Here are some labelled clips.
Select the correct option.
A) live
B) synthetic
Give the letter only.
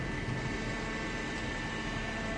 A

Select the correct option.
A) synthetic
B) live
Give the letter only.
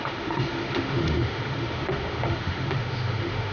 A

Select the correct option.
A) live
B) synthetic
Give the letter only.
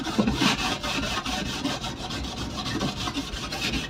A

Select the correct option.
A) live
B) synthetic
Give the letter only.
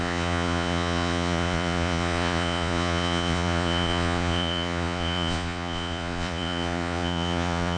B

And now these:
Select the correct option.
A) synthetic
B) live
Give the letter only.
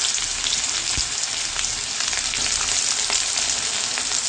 B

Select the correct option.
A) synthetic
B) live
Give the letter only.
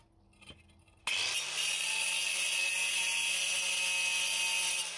B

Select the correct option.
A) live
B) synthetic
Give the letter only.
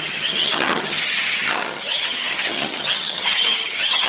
B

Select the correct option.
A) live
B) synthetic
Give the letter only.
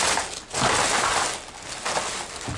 A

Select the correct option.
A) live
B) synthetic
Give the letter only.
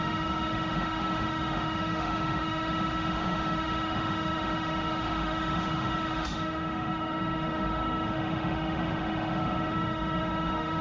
B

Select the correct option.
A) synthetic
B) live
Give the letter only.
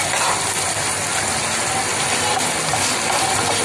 B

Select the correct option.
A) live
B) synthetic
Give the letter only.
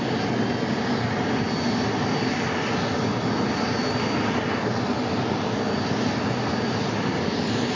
A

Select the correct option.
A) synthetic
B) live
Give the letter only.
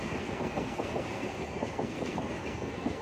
A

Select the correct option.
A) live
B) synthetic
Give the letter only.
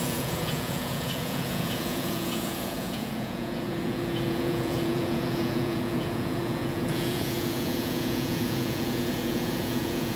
B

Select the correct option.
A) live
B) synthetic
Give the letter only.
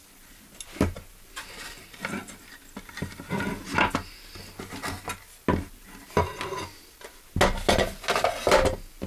A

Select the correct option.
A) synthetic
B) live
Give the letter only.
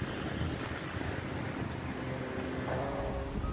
B